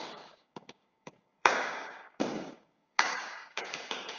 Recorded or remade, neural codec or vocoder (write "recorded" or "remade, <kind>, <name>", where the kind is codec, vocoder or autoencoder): remade, codec, DAC